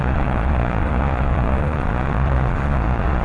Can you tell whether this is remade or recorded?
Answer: remade